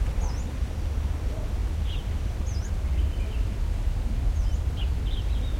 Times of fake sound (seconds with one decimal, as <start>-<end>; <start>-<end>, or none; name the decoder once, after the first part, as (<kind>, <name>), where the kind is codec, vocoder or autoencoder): none